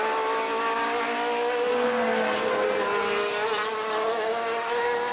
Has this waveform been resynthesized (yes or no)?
no